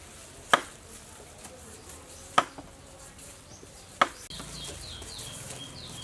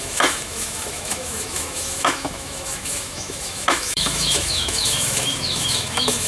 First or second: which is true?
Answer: first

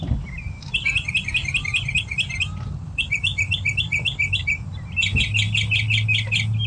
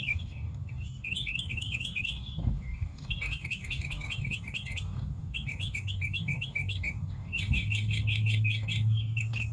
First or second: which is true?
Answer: first